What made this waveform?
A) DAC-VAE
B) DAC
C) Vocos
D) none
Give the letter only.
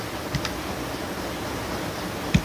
D